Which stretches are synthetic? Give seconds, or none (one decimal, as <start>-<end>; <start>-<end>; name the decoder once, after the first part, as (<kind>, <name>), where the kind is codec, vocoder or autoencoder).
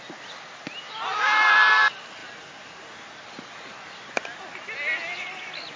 none